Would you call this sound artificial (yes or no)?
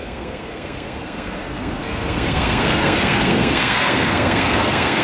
yes